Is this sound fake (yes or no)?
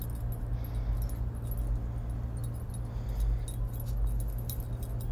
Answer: no